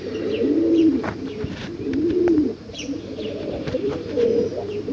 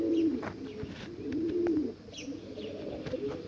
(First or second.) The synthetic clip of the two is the first